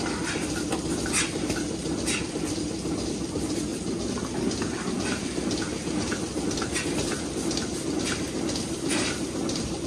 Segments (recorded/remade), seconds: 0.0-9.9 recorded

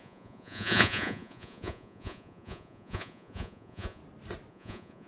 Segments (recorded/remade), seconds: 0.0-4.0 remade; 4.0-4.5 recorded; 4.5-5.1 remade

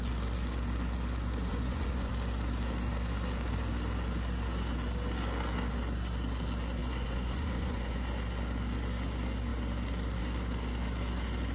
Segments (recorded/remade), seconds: 0.0-1.5 recorded; 1.5-2.1 remade; 2.1-6.8 recorded; 6.8-8.0 remade; 8.0-11.5 recorded

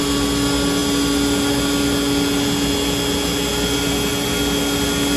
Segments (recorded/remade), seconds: 0.0-5.2 recorded

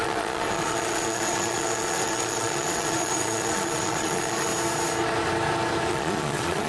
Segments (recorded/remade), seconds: 0.0-4.5 remade; 4.5-5.9 recorded; 5.9-6.7 remade